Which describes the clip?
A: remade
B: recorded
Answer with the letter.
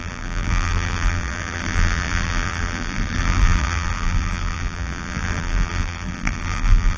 A